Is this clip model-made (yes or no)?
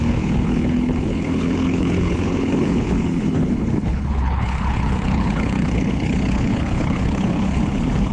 yes